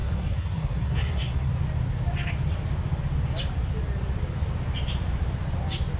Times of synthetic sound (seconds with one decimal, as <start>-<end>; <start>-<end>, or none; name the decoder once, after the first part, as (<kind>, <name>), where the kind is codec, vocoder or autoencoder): 0.0-1.5 (codec, SNAC)